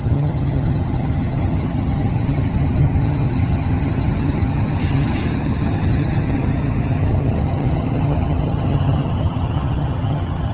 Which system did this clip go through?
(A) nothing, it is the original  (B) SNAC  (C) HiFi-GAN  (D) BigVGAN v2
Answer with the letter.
C